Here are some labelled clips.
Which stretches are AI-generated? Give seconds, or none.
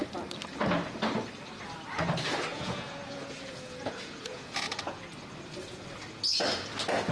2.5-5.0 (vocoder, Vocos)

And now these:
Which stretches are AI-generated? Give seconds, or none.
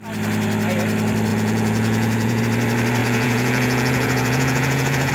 1.3-2.4 (vocoder, Vocos); 3.0-5.1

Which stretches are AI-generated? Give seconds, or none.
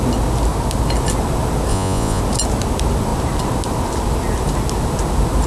1.7-2.2 (vocoder, Vocos)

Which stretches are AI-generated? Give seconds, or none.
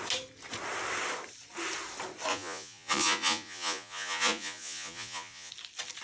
2.3-5.5 (vocoder, Vocos)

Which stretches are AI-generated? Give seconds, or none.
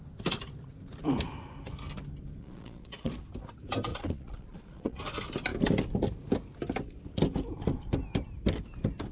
2.4-3.1 (vocoder, Vocos); 3.9-5.0